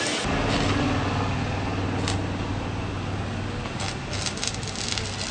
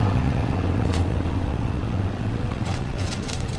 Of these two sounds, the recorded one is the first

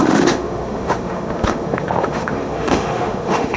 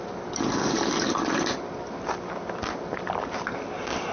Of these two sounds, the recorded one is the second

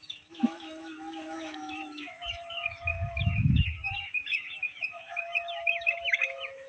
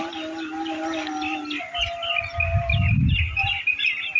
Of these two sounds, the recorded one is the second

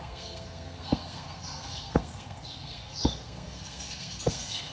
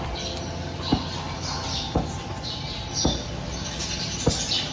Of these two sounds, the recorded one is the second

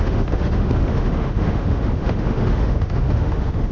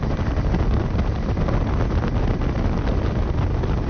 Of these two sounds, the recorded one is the second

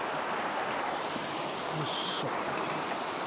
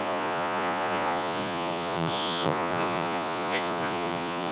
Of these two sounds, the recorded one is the first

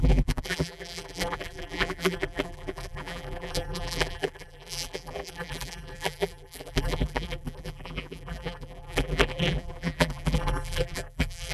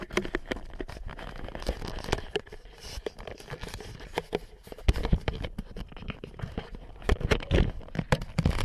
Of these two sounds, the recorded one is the second